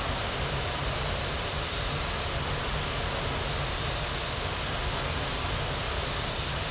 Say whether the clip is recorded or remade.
recorded